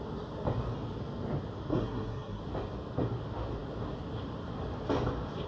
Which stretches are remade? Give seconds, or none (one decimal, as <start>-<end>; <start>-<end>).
1.7-2.4